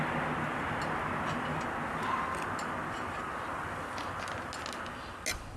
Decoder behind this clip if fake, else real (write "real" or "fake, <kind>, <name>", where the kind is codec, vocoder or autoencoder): real